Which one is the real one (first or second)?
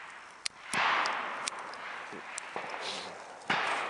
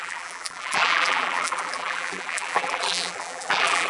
first